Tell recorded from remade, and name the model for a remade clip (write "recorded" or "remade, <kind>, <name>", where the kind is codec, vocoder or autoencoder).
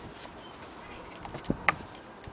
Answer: recorded